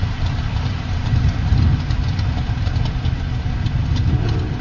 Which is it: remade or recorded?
recorded